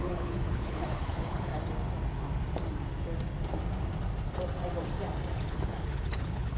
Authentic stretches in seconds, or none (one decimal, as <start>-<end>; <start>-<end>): 1.5-5.5